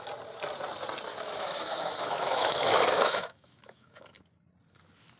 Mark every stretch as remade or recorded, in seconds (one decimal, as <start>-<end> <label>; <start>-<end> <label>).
0.0-1.1 recorded; 1.1-4.2 remade; 4.2-5.2 recorded